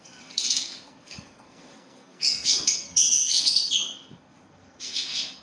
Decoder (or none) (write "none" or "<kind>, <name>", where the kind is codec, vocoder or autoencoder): codec, SNAC